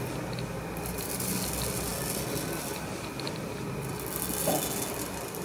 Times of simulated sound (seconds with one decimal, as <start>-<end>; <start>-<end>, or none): none